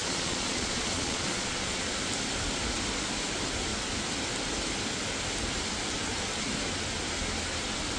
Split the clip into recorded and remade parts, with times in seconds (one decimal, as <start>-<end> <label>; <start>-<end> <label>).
0.0-1.9 remade; 1.9-8.0 recorded